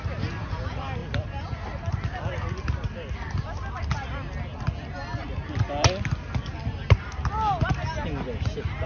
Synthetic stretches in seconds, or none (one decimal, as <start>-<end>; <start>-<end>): none